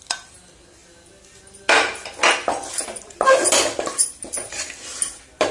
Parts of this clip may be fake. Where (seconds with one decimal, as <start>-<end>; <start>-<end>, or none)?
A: none